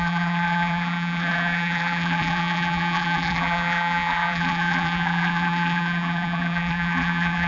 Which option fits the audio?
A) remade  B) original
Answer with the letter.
A